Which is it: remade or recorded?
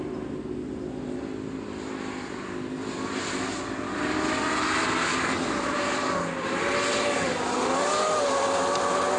recorded